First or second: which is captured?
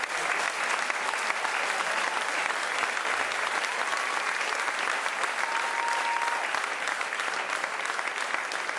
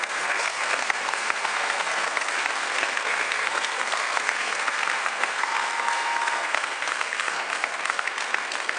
first